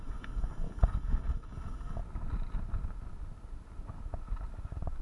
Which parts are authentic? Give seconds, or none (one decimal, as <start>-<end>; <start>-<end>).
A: 2.0-5.0